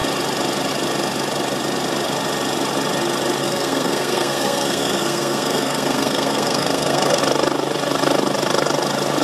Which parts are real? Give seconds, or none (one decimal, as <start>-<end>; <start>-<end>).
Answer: 0.0-3.4; 7.2-9.2